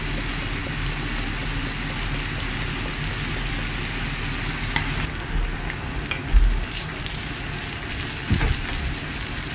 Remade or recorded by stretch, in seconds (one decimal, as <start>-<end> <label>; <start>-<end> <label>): 0.0-9.5 recorded